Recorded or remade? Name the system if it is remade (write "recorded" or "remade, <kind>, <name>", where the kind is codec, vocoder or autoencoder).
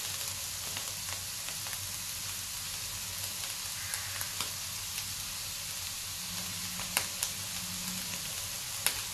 recorded